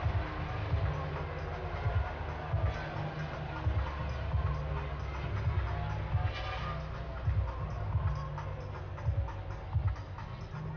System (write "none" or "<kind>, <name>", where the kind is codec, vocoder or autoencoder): none